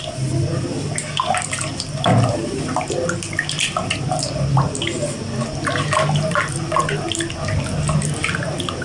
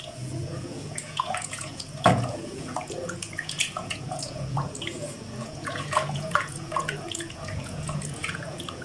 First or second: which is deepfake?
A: second